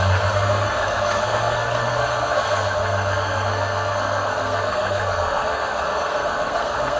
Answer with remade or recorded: remade